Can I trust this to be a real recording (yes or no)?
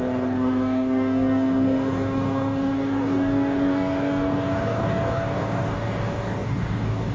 no